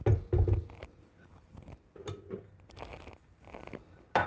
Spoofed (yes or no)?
no